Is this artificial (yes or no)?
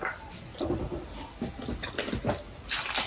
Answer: no